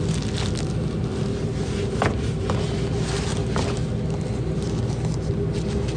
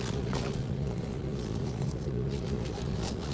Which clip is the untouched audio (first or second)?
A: first